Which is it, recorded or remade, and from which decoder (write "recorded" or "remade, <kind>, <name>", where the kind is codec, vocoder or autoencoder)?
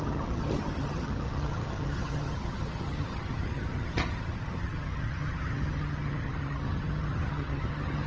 remade, vocoder, HiFi-GAN